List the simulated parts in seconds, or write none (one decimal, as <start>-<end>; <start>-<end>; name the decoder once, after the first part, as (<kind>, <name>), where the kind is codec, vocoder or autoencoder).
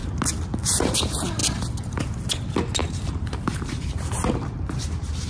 2.8-4.0 (vocoder, BigVGAN v2)